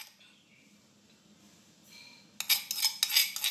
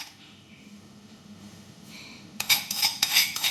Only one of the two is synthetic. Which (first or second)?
second